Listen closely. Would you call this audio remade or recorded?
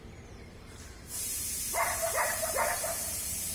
remade